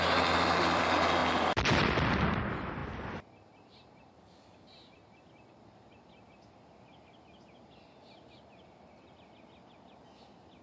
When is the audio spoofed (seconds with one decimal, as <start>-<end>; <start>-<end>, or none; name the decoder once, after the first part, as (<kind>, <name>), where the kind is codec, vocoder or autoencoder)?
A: none

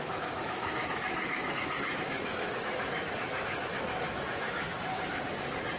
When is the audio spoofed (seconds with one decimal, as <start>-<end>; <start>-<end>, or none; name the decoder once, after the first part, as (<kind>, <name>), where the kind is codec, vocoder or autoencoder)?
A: 0.0-4.9 (autoencoder, DAC-VAE)

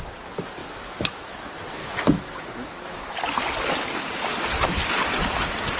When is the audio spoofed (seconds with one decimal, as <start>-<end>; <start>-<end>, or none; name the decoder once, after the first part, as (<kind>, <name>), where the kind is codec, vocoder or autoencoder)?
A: 0.6-1.3 (autoencoder, DAC-VAE); 1.8-3.0

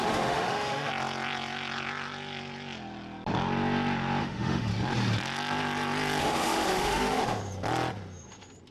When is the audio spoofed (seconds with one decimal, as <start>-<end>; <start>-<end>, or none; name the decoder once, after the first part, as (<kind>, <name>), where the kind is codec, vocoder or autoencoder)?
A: 0.0-0.9 (autoencoder, DAC-VAE); 4.2-4.7; 6.2-7.4

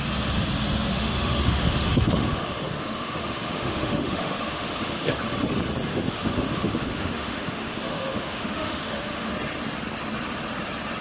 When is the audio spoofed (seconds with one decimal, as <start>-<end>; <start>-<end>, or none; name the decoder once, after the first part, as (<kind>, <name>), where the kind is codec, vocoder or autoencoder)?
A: 0.9-5.2 (autoencoder, DAC-VAE); 5.9-9.3

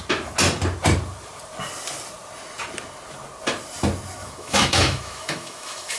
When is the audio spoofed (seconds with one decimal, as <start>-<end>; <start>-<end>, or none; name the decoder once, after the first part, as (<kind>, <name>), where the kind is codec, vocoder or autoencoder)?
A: 4.2-6.0 (autoencoder, DAC-VAE)

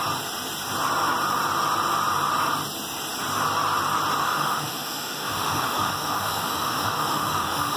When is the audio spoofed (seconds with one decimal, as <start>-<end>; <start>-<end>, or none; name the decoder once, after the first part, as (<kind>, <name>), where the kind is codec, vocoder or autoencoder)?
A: 4.2-7.8 (autoencoder, DAC-VAE)

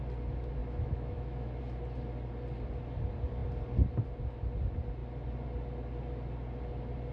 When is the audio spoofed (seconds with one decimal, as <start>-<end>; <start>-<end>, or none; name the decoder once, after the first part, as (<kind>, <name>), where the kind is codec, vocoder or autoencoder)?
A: 0.6-1.6 (autoencoder, DAC-VAE)